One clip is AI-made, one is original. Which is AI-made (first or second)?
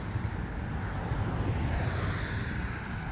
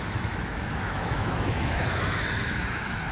second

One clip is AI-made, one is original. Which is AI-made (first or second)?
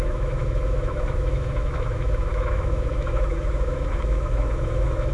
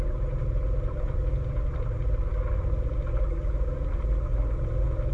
first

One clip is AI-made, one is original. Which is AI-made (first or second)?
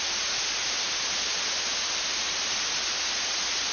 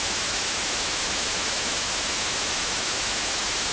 second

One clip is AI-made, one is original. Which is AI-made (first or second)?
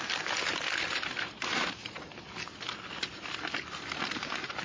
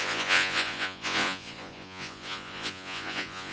second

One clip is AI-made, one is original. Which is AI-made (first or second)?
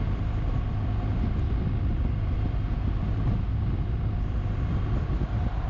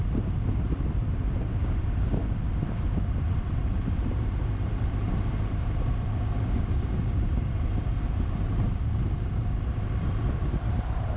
second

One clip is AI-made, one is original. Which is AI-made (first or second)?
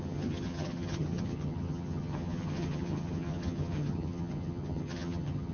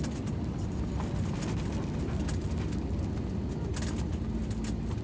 first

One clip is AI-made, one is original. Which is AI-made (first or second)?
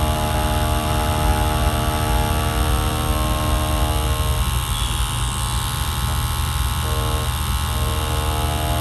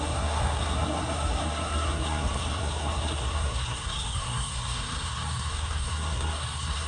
second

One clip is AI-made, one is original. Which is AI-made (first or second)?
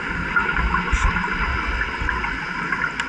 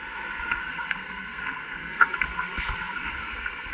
second